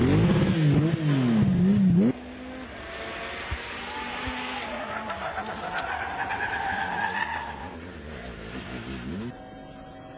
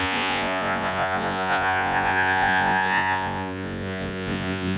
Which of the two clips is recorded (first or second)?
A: first